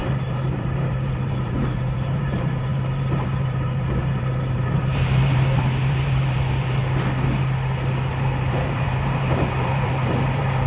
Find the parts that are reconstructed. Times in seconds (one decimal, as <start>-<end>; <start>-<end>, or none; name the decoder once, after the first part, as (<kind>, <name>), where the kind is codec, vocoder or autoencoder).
0.0-6.8 (vocoder, BigVGAN v2); 8.1-10.7

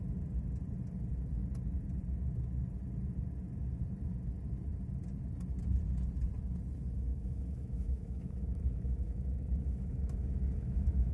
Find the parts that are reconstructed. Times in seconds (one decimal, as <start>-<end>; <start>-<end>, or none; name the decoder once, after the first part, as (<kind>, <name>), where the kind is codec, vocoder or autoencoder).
7.1-11.1 (autoencoder, DAC-VAE)

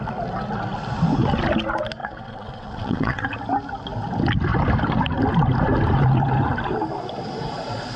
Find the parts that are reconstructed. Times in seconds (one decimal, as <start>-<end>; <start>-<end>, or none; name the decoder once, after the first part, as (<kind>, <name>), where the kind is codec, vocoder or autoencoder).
2.0-3.3 (vocoder, WaveNeXt)

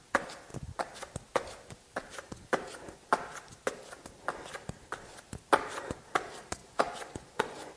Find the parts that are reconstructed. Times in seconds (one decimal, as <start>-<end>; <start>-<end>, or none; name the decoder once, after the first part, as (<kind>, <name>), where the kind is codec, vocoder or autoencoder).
6.6-7.8 (vocoder, Vocos)

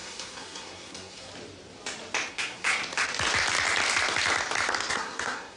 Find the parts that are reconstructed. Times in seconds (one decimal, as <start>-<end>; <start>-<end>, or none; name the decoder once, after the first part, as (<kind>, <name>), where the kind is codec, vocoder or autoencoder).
0.0-1.3 (codec, SNAC); 2.3-2.8; 4.9-5.6

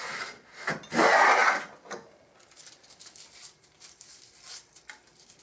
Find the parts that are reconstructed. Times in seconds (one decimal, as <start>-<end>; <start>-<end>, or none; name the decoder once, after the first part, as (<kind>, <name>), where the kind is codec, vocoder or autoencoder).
none